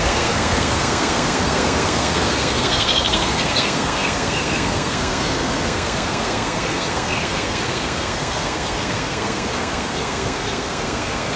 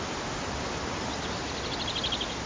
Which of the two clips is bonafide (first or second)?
second